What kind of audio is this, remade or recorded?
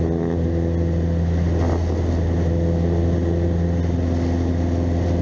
recorded